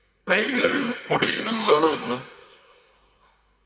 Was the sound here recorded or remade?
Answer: remade